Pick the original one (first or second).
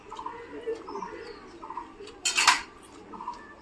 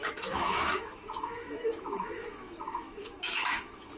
first